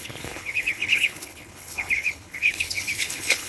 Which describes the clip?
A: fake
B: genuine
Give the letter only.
A